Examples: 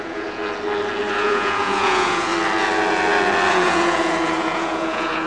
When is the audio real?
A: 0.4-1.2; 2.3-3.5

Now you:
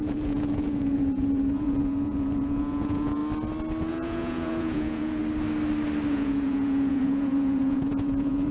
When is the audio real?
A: 3.2-3.9; 5.2-6.1

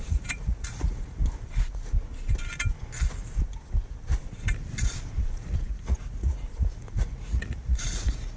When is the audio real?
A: 1.2-5.2

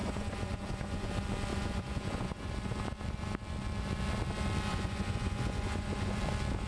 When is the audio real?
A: 1.1-1.5; 2.5-4.7; 6.2-6.7

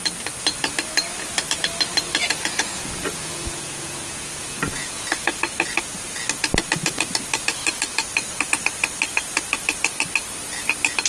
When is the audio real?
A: 0.0-2.2; 5.0-11.1

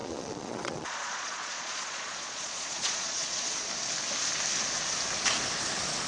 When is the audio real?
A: 3.7-6.1